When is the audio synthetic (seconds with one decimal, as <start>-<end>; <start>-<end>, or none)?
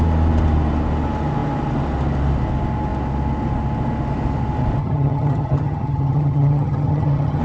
4.8-7.4